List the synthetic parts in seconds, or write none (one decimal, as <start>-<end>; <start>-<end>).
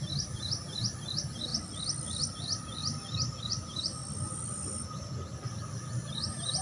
0.0-1.5; 2.3-2.8; 3.4-4.0; 5.7-6.6